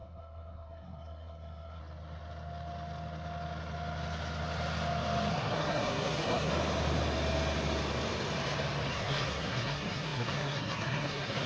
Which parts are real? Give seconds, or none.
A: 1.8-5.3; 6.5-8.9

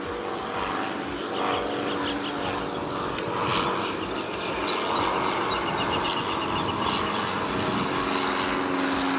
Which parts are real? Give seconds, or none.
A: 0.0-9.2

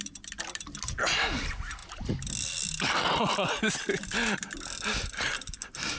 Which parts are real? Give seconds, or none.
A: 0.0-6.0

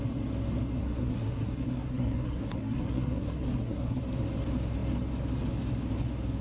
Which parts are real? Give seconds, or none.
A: 0.0-0.8; 4.0-6.4

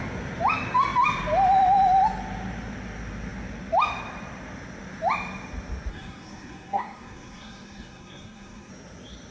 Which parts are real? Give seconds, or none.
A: 0.0-5.9; 8.7-9.3

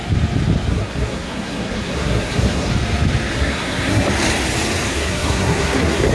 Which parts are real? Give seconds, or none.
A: 0.0-0.7; 2.7-3.3; 4.1-4.9